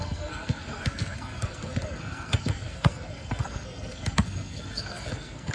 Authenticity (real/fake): fake